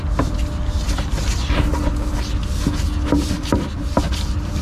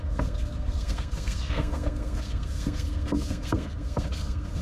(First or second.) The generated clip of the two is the second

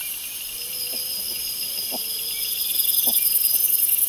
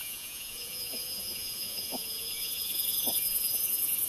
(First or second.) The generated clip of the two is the second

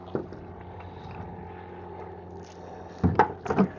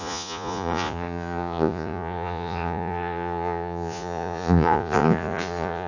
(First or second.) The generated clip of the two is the second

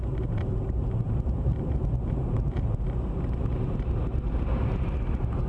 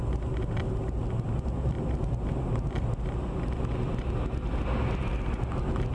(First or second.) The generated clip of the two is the first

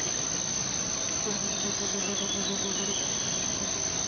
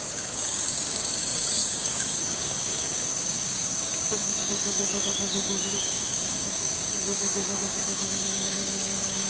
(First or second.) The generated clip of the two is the second